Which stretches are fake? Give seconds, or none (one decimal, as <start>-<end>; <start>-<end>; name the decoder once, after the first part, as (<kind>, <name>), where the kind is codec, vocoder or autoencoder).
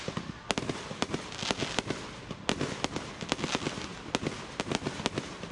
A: none